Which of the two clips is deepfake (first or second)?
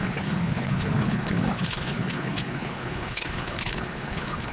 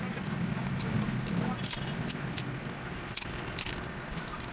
first